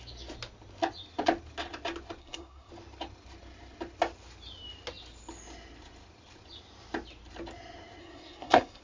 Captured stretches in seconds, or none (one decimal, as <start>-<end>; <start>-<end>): 0.0-2.2; 2.7-8.0